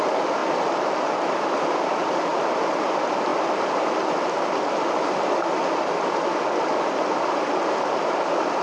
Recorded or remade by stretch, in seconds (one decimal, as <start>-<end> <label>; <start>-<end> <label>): 0.0-0.4 remade; 0.4-1.1 recorded; 1.1-2.3 remade; 2.3-2.8 recorded; 2.8-8.6 remade